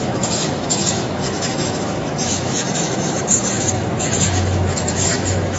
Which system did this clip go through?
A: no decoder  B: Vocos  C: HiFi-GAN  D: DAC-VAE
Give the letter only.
D